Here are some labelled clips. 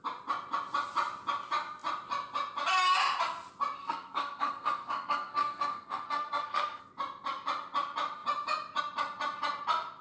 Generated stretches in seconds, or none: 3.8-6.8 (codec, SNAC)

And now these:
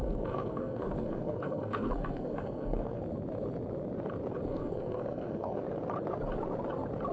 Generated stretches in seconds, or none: 0.0-3.0 (codec, SNAC); 4.5-5.6

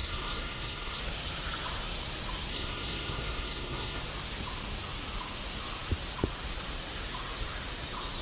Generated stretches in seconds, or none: 0.0-1.0 (codec, SNAC); 2.5-4.0

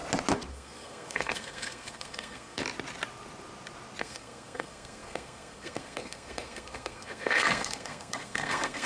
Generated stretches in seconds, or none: 0.5-2.6 (codec, SNAC); 4.0-8.9

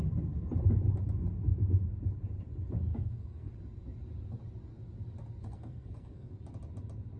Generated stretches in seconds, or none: 2.9-3.5 (codec, SNAC); 5.4-6.3